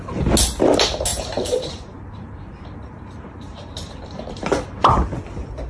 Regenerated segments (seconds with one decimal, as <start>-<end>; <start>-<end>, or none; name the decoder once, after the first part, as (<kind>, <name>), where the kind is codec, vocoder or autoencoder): 1.1-4.5 (vocoder, BigVGAN v2)